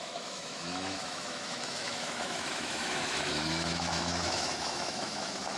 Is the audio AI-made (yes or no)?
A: yes